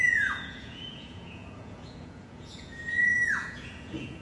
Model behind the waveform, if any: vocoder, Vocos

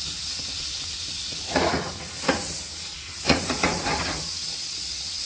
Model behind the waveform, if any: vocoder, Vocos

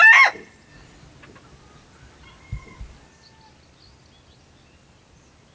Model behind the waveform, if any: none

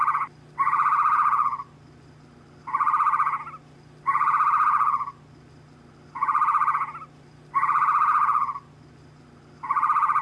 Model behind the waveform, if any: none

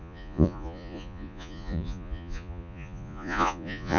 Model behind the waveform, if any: vocoder, Vocos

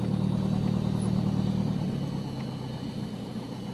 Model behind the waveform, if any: none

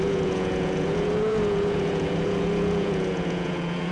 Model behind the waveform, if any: vocoder, Vocos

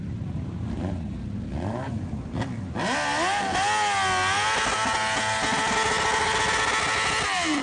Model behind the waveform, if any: none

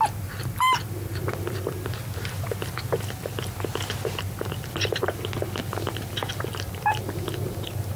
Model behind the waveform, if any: none